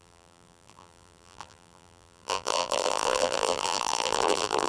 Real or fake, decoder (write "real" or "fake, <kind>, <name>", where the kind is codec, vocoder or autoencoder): fake, vocoder, BigVGAN v2